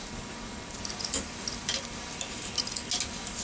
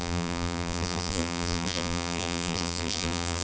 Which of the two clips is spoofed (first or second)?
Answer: second